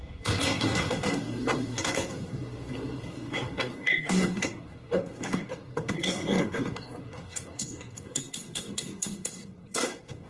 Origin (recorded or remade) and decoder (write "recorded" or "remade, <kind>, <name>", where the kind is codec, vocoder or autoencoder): remade, codec, SNAC